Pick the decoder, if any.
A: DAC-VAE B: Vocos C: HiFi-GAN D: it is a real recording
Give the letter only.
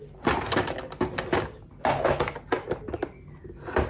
D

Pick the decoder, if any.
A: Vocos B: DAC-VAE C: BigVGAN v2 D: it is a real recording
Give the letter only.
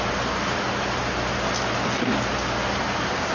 D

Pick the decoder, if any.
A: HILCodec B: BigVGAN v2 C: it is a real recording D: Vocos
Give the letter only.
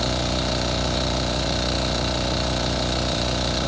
D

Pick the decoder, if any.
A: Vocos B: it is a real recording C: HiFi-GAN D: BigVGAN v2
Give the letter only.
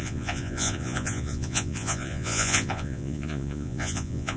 A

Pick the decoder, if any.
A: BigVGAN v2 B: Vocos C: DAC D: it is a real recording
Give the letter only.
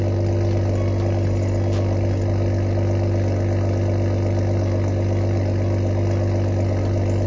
D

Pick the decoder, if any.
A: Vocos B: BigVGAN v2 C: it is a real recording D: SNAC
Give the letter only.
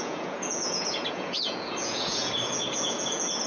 A